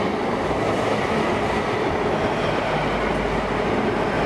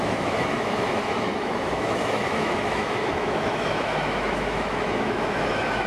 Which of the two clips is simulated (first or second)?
second